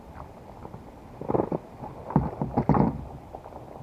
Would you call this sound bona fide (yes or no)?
yes